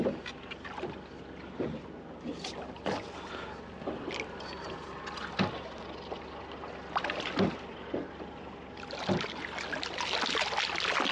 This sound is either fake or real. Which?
real